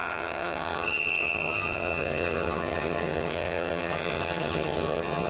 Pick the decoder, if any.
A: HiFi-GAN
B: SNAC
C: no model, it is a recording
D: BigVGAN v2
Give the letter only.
A